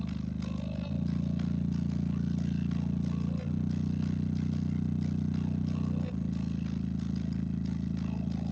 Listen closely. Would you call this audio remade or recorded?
recorded